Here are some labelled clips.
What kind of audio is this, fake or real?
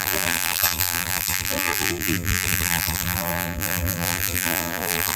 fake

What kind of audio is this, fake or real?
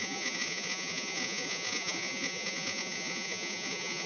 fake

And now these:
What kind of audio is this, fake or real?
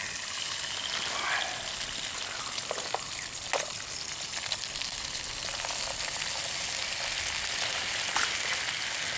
real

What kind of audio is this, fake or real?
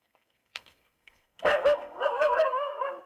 fake